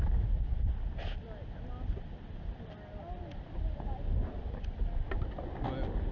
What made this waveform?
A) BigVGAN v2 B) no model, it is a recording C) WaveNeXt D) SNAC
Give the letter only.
B